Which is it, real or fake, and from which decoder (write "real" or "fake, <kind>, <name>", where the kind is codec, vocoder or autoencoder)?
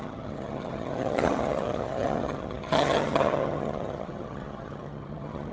fake, vocoder, HiFi-GAN